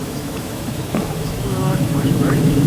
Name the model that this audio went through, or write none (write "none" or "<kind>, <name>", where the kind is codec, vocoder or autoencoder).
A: autoencoder, DAC-VAE